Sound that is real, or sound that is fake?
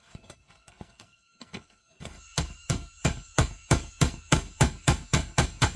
fake